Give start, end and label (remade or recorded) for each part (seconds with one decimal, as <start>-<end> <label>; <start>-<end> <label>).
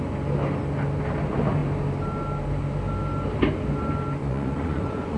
0.0-4.2 recorded; 4.2-5.2 remade